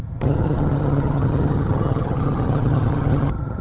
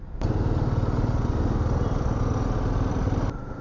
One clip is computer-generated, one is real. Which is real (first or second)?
second